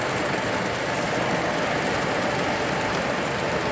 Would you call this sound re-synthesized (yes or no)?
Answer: no